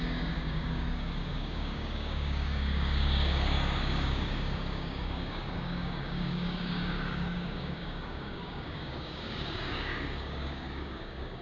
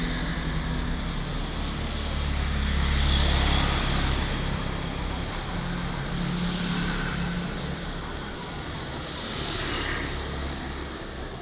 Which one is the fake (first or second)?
first